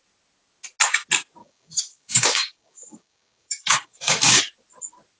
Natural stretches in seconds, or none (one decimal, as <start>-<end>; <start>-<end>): 0.0-1.4; 4.4-5.2